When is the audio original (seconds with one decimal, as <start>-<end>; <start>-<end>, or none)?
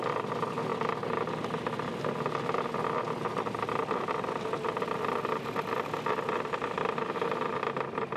0.0-8.2